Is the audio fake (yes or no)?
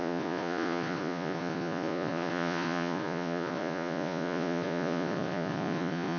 yes